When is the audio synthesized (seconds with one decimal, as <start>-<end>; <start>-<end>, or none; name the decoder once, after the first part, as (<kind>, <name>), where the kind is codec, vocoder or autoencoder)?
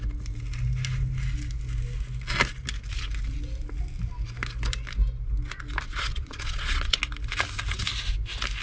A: 6.1-7.0 (vocoder, Vocos)